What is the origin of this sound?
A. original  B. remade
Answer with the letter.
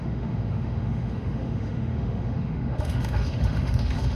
B